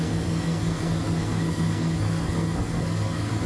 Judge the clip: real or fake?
fake